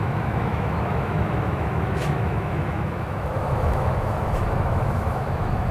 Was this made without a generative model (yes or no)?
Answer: no